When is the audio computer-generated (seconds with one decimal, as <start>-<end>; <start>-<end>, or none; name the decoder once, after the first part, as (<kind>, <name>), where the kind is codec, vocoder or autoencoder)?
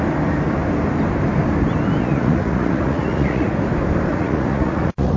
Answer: 2.0-3.5 (vocoder, Vocos); 4.1-5.2